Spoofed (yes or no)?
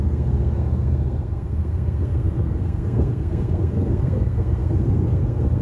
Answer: yes